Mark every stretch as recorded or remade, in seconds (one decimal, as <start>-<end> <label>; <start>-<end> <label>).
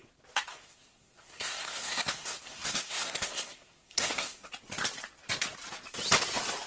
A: 0.0-0.5 recorded; 0.5-4.5 remade; 4.5-6.7 recorded